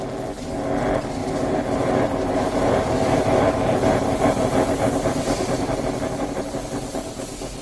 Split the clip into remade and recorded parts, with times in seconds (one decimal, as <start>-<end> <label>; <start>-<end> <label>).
0.0-1.2 recorded; 1.2-5.8 remade; 5.8-7.6 recorded